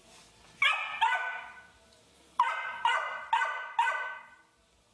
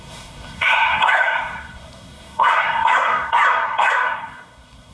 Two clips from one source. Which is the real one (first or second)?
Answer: first